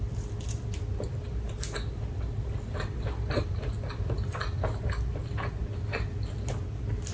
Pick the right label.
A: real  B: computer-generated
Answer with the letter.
A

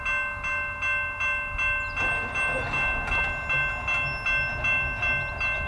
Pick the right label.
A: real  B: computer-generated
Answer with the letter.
A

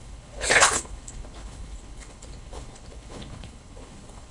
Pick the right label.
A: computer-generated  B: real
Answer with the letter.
A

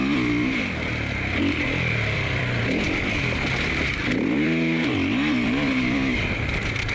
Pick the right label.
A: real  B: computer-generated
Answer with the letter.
B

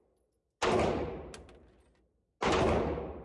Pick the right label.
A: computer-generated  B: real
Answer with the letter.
B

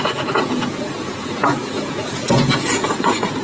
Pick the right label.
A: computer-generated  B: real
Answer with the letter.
A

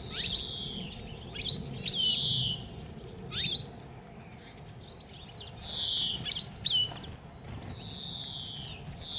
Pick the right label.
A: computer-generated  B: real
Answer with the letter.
B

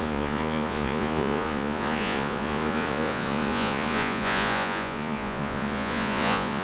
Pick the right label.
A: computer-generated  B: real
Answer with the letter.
A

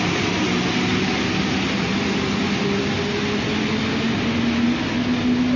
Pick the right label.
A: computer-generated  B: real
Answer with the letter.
B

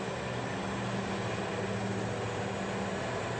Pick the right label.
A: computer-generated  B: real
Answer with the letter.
B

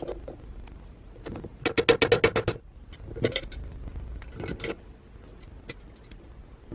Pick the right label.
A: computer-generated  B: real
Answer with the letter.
B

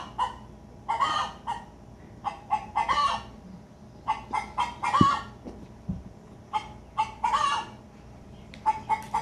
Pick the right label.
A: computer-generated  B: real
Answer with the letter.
B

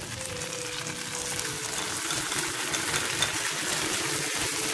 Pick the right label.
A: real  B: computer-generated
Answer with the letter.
A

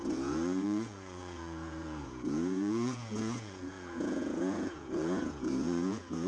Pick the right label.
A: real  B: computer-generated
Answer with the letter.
B